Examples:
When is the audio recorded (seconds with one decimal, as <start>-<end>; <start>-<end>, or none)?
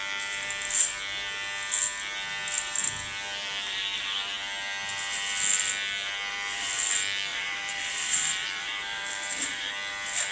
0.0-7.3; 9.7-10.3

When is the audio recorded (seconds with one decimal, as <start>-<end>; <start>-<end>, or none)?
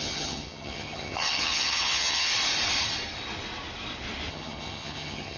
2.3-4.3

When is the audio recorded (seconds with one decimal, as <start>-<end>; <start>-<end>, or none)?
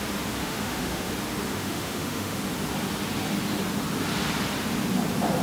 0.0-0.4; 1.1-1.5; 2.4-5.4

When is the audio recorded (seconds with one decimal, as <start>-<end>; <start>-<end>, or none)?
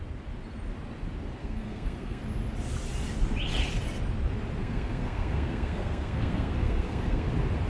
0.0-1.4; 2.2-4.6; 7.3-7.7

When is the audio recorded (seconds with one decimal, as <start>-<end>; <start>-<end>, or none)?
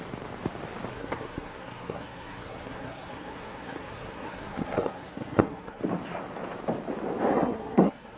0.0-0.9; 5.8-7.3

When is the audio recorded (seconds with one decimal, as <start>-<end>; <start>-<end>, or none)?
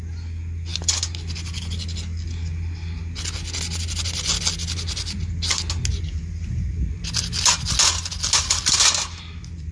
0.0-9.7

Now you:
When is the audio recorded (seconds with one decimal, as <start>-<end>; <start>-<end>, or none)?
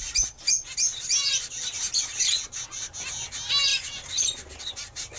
0.0-5.2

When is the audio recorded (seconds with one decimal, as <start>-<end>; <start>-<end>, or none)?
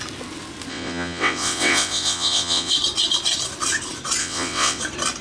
0.0-0.7; 2.7-4.2; 4.8-5.2